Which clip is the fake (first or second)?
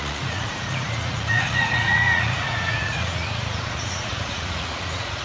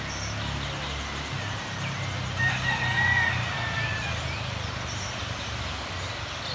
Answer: first